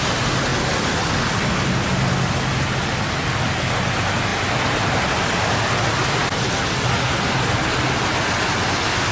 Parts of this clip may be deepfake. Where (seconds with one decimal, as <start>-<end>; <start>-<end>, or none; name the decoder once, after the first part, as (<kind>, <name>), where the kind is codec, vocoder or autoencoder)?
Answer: none